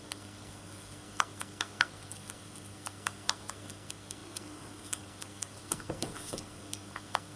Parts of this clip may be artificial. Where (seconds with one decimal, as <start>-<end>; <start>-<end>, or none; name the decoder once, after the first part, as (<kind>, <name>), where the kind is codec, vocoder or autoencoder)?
0.0-7.4 (codec, SNAC)